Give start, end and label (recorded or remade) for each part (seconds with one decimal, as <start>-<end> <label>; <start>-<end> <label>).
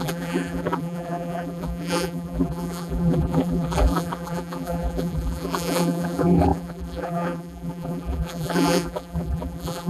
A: 0.0-9.9 remade